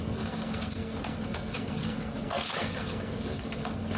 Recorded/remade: remade